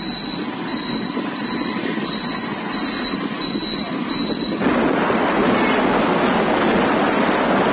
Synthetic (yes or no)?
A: no